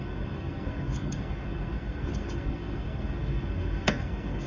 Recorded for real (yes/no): no